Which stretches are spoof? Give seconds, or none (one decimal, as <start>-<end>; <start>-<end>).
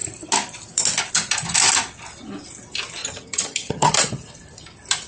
3.0-3.9